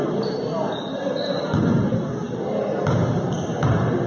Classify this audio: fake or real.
real